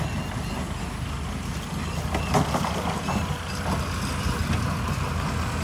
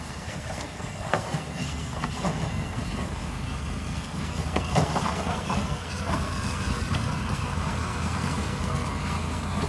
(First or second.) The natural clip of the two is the first